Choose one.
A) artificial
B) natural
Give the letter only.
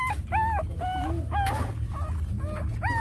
B